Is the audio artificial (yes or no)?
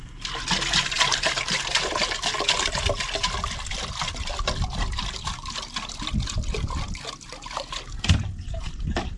no